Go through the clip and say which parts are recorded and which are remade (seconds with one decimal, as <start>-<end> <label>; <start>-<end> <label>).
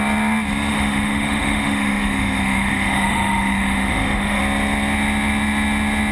0.0-0.7 recorded; 0.7-4.4 remade; 4.4-6.1 recorded